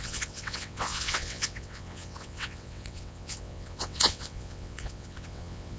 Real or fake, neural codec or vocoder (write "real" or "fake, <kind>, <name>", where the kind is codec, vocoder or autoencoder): fake, vocoder, WaveNeXt